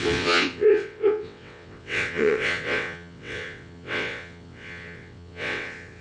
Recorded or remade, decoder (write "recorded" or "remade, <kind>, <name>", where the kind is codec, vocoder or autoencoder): remade, vocoder, WaveNeXt